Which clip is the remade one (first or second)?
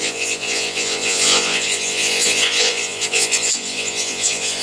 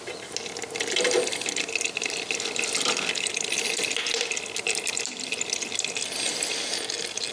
first